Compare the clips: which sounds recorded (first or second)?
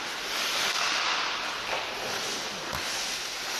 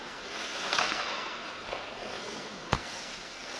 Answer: first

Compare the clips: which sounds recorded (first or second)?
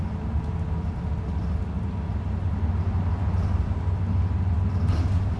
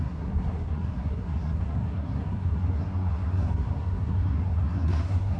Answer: first